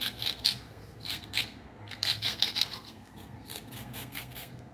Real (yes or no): no